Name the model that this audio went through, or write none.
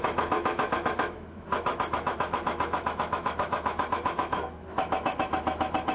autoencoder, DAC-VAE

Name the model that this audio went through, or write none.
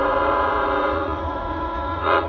vocoder, Vocos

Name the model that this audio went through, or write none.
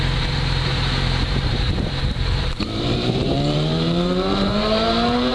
vocoder, BigVGAN v2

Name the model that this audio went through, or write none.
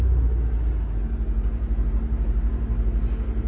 none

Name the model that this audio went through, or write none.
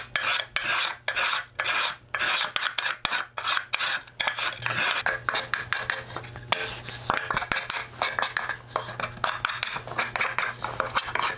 none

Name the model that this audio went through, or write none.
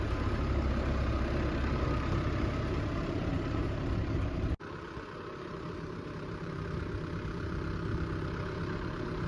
vocoder, BigVGAN v2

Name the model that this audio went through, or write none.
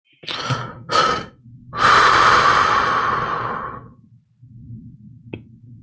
none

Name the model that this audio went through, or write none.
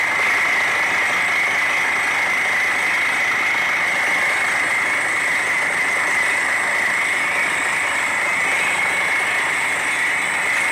none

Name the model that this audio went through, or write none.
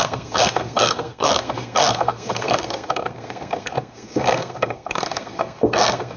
codec, SNAC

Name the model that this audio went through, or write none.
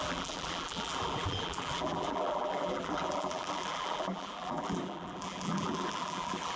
vocoder, BigVGAN v2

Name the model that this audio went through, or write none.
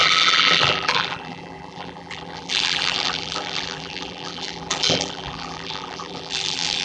vocoder, BigVGAN v2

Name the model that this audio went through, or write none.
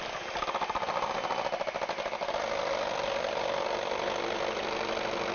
none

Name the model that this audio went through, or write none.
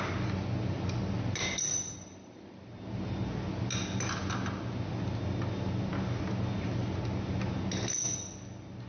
none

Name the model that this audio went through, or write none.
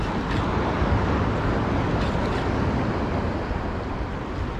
none